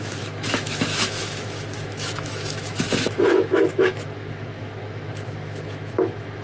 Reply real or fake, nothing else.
fake